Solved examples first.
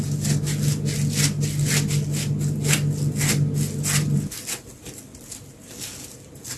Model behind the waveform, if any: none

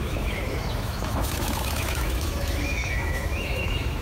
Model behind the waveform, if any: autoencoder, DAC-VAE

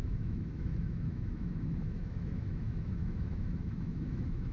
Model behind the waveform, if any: autoencoder, DAC-VAE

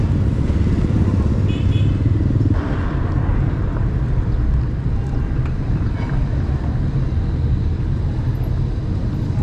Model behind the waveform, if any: none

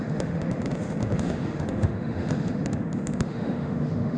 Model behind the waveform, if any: autoencoder, DAC-VAE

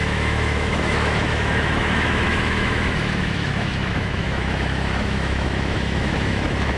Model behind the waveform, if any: autoencoder, DAC-VAE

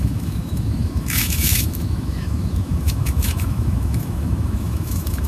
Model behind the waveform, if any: autoencoder, DAC-VAE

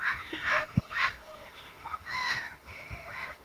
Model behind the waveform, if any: autoencoder, DAC-VAE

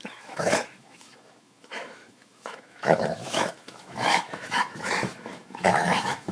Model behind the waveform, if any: autoencoder, DAC-VAE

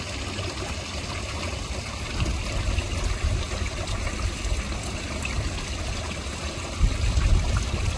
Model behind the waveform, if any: none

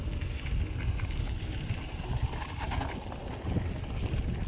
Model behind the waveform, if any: none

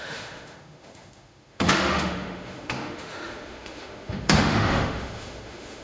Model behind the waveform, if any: autoencoder, DAC-VAE